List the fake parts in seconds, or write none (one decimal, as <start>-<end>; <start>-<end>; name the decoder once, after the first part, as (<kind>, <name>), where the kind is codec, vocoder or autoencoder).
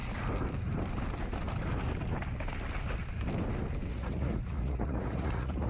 3.9-5.7 (vocoder, Vocos)